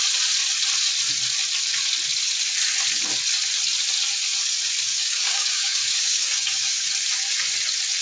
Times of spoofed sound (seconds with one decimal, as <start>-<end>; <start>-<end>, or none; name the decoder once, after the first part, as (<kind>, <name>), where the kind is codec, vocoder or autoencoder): 4.9-6.9 (codec, DAC)